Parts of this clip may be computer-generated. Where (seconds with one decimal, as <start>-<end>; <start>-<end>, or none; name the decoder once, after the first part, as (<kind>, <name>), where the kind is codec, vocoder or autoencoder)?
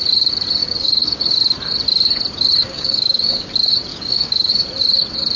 0.6-1.2 (codec, DAC); 2.6-3.5; 3.9-4.5